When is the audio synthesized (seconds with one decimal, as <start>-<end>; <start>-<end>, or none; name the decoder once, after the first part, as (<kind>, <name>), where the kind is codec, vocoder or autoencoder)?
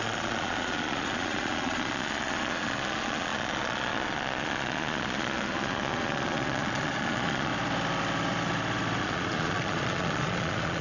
0.0-7.5 (vocoder, Vocos); 9.0-10.8